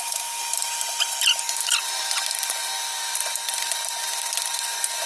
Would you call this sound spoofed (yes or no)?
no